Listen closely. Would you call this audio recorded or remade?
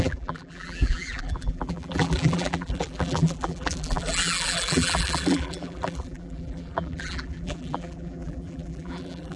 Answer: remade